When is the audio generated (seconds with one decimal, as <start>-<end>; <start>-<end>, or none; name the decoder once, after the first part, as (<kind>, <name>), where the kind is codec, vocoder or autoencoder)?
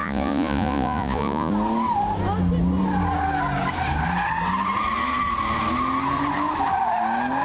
0.0-1.5 (vocoder, Vocos)